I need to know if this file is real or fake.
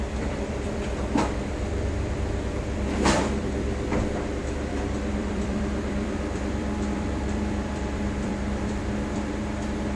fake